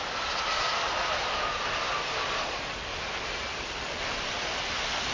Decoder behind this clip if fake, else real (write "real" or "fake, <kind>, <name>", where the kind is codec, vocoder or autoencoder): real